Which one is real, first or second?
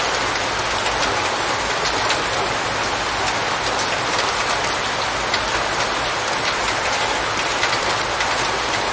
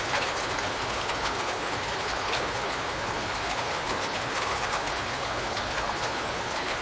first